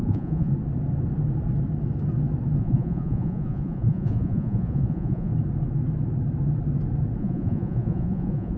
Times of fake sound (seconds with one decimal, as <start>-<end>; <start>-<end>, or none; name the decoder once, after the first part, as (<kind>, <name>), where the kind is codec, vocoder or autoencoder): 0.0-0.5 (vocoder, Vocos); 2.6-5.3; 7.2-8.6